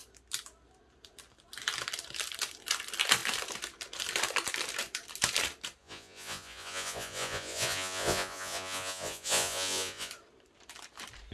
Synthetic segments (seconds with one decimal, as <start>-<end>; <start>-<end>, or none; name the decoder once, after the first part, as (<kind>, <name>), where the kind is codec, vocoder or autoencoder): 5.8-10.1 (vocoder, Vocos)